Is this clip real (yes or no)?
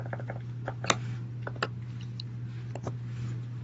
yes